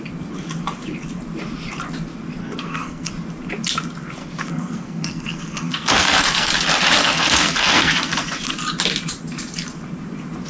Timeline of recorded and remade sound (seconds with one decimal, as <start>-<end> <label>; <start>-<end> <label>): 0.0-2.4 recorded; 2.4-3.1 remade; 3.1-4.2 recorded; 4.2-6.5 remade; 6.5-7.0 recorded; 7.0-8.5 remade; 8.5-10.5 recorded